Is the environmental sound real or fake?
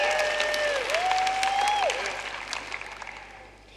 real